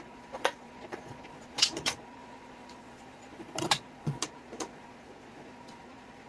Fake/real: fake